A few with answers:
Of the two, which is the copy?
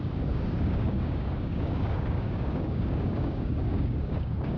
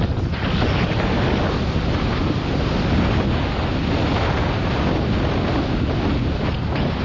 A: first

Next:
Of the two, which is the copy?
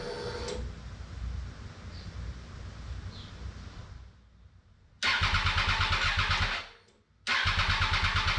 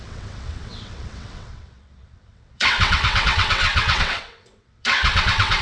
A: second